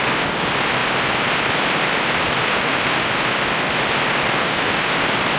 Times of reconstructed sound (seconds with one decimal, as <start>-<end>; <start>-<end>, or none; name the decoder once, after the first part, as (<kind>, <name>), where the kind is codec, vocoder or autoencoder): 2.4-3.1 (autoencoder, DAC-VAE); 4.4-4.9